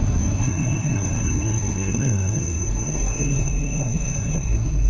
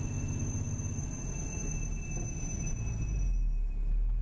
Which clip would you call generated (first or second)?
first